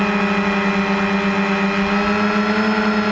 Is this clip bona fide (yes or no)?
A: yes